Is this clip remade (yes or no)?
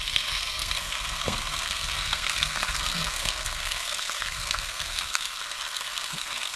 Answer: yes